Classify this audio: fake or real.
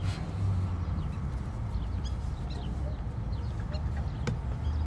real